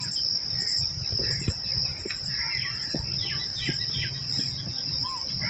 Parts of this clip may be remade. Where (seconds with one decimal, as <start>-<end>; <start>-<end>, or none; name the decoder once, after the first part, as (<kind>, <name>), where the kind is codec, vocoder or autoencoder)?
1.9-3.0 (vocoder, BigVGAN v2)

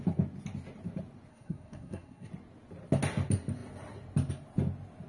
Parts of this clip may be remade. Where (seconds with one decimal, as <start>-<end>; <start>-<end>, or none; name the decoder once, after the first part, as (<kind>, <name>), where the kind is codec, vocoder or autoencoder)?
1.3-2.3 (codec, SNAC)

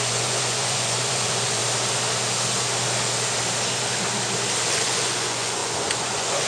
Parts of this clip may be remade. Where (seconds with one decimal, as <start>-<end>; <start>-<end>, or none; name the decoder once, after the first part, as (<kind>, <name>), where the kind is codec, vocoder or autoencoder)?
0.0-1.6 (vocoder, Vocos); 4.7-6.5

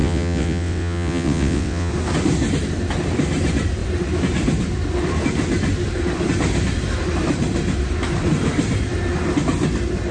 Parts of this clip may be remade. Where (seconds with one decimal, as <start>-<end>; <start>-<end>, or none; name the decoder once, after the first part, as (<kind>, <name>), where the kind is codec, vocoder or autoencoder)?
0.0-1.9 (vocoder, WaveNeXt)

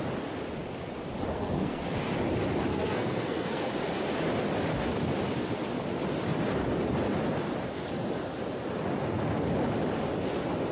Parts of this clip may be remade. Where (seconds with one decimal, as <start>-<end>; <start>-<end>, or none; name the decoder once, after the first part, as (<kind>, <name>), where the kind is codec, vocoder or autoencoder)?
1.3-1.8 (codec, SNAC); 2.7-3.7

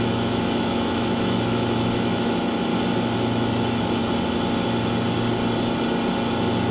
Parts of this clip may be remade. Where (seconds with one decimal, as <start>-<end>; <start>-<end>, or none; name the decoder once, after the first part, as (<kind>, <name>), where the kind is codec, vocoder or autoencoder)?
0.0-2.7 (autoencoder, DAC-VAE); 3.3-4.0